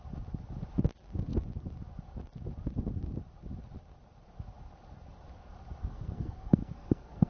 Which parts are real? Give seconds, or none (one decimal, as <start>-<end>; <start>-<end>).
0.0-5.8